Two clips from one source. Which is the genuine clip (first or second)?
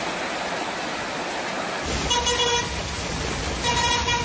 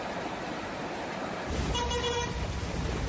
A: first